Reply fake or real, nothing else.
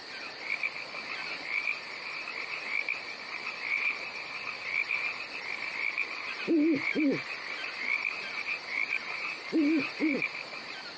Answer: fake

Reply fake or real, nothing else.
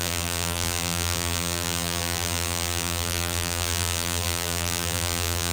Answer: fake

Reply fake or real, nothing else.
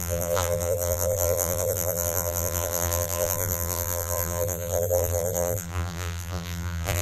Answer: fake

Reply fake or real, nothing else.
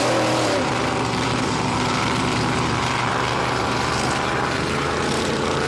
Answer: fake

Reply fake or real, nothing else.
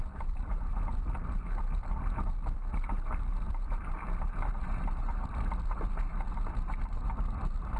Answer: fake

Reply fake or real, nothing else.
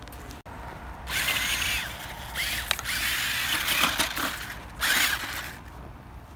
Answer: real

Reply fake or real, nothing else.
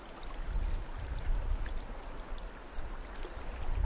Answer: fake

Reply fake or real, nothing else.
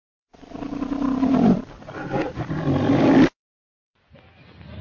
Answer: real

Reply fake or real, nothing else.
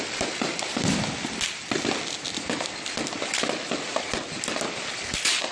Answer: real